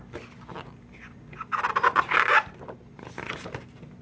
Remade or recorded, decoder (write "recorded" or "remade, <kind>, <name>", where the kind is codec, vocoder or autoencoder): recorded